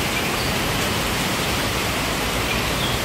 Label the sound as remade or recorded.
remade